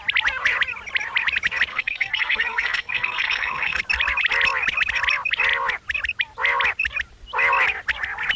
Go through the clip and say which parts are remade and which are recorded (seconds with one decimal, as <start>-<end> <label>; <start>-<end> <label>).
0.0-1.7 recorded; 1.7-3.8 remade; 3.8-8.4 recorded